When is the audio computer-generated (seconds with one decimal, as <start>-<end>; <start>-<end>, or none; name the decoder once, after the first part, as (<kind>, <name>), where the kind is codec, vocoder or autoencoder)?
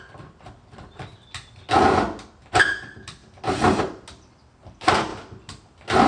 0.0-1.1 (vocoder, BigVGAN v2); 2.4-3.2; 4.3-5.1